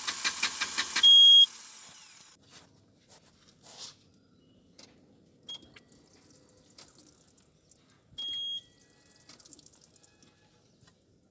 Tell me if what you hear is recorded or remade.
recorded